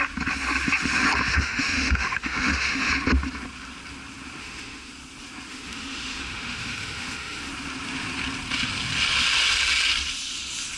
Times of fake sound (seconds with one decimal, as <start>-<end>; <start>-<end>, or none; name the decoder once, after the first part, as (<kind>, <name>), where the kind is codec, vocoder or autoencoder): 1.3-2.9 (autoencoder, DAC-VAE); 4.4-4.9; 5.5-7.5